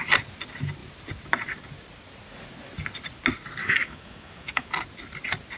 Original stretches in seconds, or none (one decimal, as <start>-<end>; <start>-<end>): 0.0-3.6; 4.7-5.6